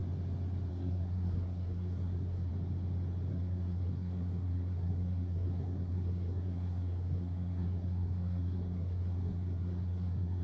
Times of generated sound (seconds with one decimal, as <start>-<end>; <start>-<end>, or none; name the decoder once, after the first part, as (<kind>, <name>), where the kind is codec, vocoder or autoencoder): 0.7-2.5 (codec, SNAC); 3.3-10.4